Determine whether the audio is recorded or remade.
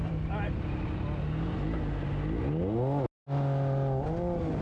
recorded